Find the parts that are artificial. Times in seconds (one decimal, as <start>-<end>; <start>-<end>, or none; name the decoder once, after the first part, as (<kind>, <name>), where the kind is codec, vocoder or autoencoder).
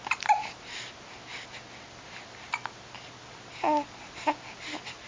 none